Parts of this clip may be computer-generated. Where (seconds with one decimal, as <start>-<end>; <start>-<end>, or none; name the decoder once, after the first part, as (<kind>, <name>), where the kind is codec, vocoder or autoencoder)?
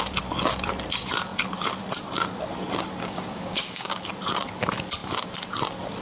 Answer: 3.0-4.1 (codec, DAC)